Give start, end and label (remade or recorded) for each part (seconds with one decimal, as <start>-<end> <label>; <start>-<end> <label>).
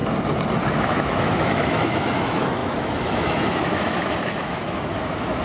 0.0-0.7 recorded; 0.7-5.4 remade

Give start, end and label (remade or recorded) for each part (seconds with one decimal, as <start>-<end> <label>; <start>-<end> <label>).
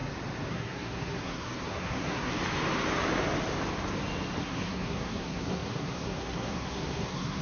0.0-0.5 recorded; 0.5-2.3 remade; 2.3-4.4 recorded; 4.4-7.4 remade